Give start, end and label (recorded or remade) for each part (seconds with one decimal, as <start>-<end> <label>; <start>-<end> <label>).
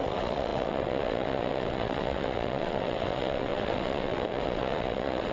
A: 0.0-5.3 remade